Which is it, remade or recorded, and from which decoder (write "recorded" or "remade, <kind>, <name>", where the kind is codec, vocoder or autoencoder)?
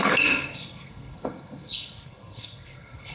remade, codec, SNAC